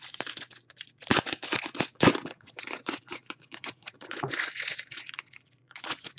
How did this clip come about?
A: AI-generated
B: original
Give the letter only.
A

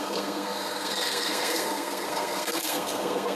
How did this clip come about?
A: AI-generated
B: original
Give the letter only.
A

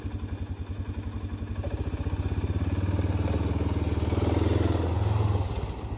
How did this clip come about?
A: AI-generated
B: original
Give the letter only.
B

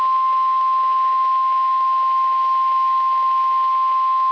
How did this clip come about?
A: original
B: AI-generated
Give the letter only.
B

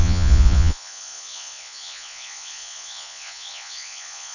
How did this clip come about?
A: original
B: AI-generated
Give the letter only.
B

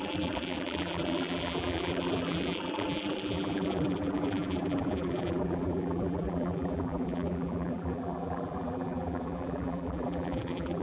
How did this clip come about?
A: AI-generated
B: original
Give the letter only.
A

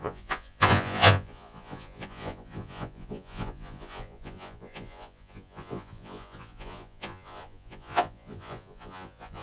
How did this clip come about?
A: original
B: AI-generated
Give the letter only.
B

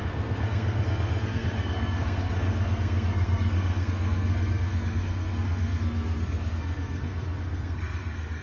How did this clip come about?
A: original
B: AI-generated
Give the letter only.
B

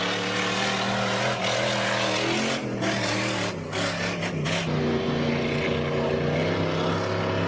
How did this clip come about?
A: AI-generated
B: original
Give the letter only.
B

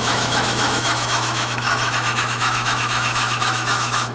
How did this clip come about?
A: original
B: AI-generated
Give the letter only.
B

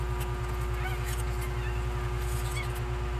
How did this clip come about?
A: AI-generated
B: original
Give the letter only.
B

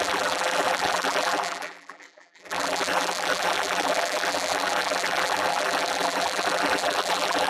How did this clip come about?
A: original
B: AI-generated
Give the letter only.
B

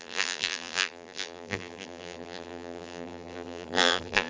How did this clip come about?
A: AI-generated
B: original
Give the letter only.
A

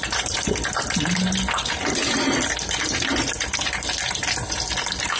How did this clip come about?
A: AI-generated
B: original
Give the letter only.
A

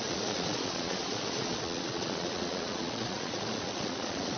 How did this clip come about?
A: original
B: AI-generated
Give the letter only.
B